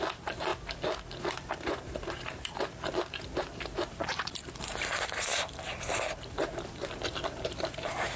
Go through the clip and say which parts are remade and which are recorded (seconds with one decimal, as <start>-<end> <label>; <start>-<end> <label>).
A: 0.0-0.5 remade; 0.5-1.2 recorded; 1.2-8.2 remade